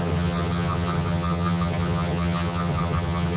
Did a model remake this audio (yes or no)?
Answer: yes